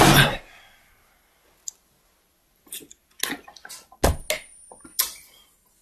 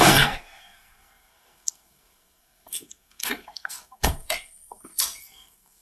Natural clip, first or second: first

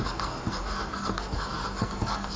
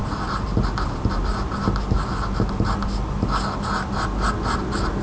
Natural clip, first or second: second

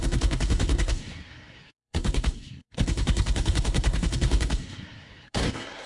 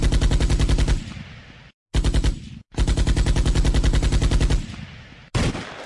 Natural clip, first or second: second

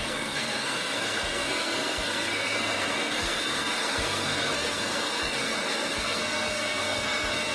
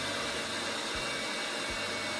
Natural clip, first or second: second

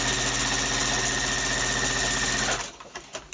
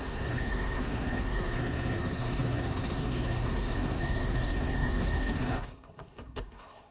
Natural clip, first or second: first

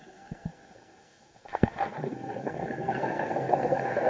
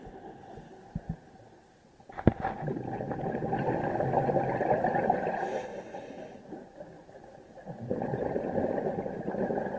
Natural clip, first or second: second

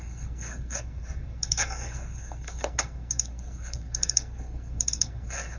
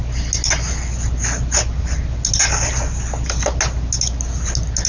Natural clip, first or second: second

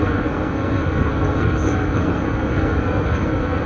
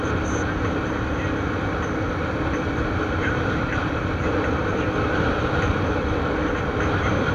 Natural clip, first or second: second